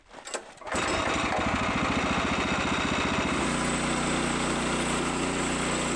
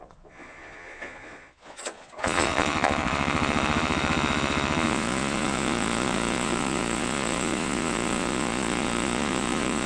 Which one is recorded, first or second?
first